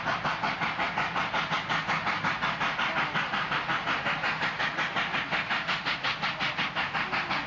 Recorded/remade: recorded